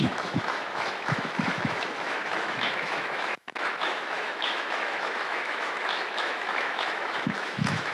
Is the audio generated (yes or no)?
yes